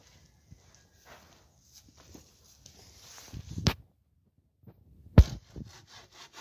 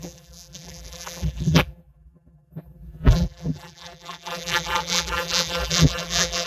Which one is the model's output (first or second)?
second